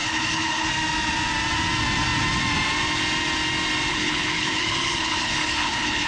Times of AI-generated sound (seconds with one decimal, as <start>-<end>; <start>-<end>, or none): 0.0-0.7; 3.9-6.1